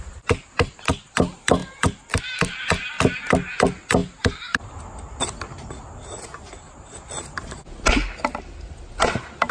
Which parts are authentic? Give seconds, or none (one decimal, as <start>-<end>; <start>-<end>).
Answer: 0.0-9.5